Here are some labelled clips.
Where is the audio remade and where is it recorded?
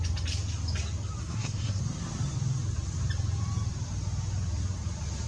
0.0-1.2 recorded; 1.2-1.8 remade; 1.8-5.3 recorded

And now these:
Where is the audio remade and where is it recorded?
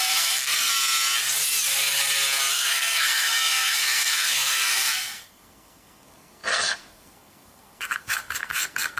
0.0-0.7 remade; 0.7-2.5 recorded; 2.5-9.0 remade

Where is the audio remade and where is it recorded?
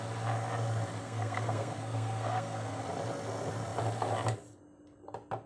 0.0-1.0 recorded; 1.0-2.8 remade; 2.8-5.5 recorded